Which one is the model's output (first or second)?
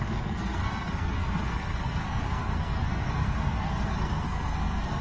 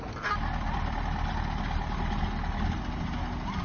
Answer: first